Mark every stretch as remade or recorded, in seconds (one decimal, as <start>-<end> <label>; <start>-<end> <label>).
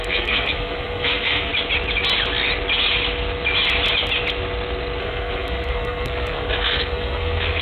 0.0-1.5 remade; 1.5-5.0 recorded; 5.0-7.6 remade